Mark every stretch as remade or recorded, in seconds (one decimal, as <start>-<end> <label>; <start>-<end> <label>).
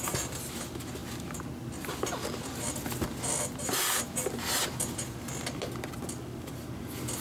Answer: 0.0-7.2 recorded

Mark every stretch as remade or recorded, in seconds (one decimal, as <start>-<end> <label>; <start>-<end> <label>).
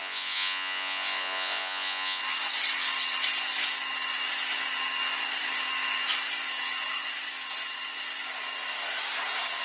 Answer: 0.0-2.2 remade; 2.2-9.6 recorded